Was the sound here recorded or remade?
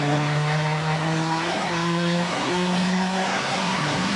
remade